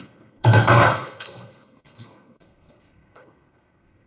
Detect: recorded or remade remade